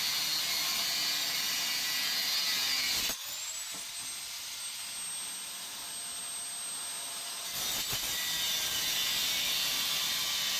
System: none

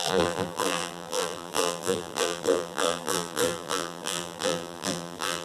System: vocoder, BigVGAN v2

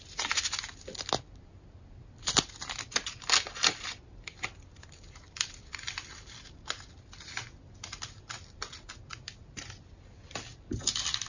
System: none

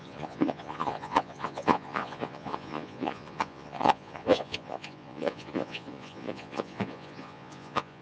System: vocoder, Vocos